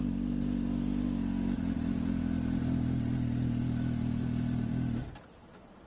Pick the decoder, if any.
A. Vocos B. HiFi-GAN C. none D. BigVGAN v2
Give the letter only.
C